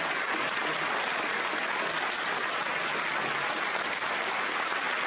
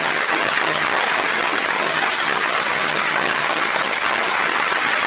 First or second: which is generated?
second